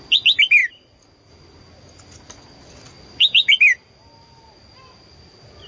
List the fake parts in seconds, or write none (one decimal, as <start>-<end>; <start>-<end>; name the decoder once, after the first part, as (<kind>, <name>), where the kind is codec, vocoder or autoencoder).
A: none